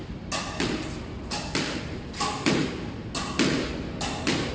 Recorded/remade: recorded